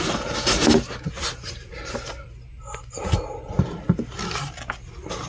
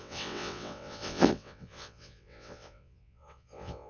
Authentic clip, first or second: first